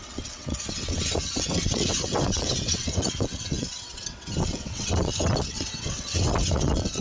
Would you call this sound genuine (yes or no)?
no